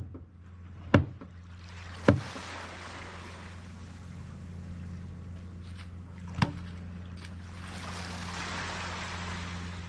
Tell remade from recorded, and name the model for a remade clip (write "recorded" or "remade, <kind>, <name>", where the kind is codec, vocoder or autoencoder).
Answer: recorded